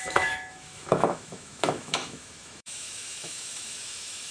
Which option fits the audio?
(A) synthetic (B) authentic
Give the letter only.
A